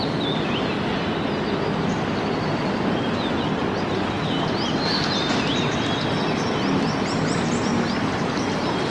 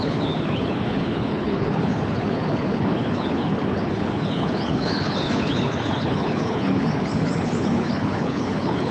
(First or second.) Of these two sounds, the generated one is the second